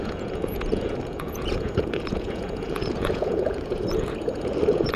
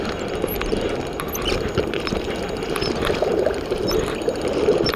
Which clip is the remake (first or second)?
first